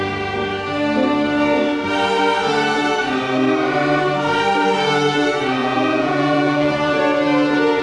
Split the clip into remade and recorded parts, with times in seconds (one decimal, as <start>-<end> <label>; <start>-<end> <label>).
0.0-5.6 recorded; 5.6-7.0 remade; 7.0-7.8 recorded